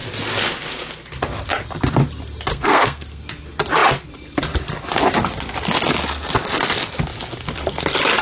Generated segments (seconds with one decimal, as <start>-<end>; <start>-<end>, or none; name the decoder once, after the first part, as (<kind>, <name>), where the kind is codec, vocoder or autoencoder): 2.5-3.2 (codec, SNAC)